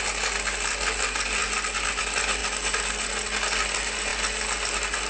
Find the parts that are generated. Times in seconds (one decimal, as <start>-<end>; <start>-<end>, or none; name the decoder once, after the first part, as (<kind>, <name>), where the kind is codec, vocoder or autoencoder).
none